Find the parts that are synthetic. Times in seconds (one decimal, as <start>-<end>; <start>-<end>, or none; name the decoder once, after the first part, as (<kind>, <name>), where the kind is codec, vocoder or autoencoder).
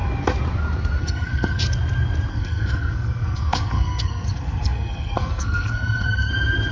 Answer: 1.0-1.6 (codec, SNAC); 2.3-6.3